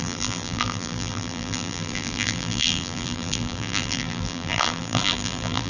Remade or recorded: remade